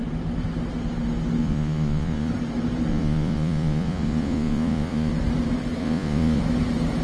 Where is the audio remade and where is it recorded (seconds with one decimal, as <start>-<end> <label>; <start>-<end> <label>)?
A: 0.0-1.4 recorded; 1.4-2.3 remade; 2.3-2.9 recorded; 2.9-5.1 remade; 5.1-5.8 recorded; 5.8-6.4 remade; 6.4-7.0 recorded

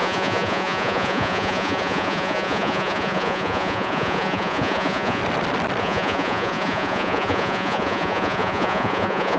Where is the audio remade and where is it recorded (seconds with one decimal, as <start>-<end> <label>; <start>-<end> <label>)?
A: 0.0-5.2 remade; 5.2-5.8 recorded; 5.8-9.4 remade

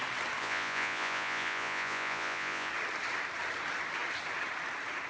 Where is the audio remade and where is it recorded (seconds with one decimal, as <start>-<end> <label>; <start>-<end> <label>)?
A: 0.0-0.4 recorded; 0.4-2.7 remade; 2.7-5.1 recorded

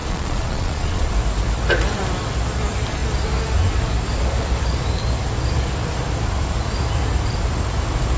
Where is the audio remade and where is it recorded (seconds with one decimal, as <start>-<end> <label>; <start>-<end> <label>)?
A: 0.0-1.1 remade; 1.1-8.2 recorded

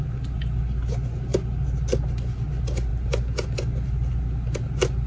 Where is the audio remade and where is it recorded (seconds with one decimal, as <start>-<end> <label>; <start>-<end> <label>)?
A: 0.0-5.1 recorded

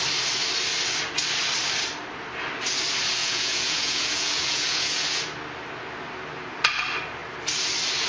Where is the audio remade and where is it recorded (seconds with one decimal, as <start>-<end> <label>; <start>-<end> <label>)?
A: 0.0-3.2 recorded; 3.2-5.2 remade; 5.2-8.1 recorded